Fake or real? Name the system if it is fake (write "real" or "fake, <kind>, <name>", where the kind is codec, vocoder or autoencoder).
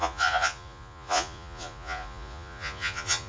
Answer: fake, vocoder, Vocos